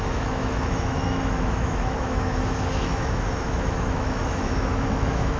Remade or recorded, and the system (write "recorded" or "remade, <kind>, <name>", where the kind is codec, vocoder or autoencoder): remade, autoencoder, DAC-VAE